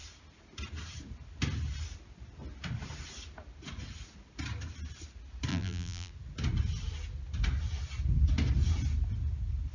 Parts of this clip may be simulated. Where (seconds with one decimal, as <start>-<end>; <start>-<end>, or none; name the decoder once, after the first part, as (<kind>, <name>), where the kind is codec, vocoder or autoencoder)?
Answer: 5.5-6.1 (vocoder, BigVGAN v2)